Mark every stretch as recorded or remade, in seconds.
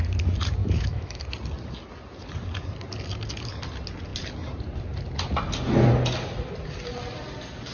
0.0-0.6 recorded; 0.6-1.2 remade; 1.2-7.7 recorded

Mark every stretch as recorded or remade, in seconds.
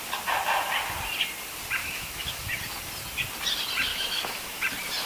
0.0-1.8 recorded; 1.8-2.6 remade; 2.6-3.9 recorded; 3.9-4.6 remade; 4.6-5.1 recorded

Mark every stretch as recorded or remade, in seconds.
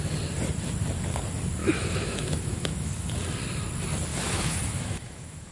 0.0-1.6 recorded; 1.6-3.2 remade; 3.2-4.1 recorded; 4.1-5.5 remade